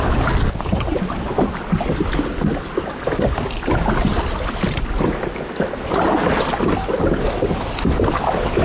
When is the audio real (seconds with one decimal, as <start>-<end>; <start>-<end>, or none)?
0.0-8.6